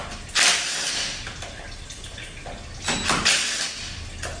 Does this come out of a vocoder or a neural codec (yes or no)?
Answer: no